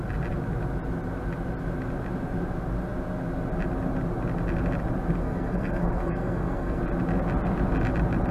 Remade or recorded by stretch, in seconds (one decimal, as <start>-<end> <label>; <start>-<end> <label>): 0.0-5.2 recorded; 5.2-6.8 remade; 6.8-8.3 recorded